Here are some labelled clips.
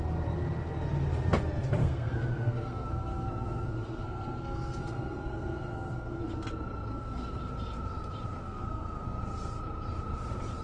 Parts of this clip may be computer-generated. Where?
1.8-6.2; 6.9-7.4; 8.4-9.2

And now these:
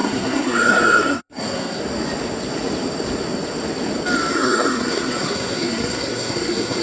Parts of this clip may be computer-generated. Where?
0.0-1.8; 4.3-6.8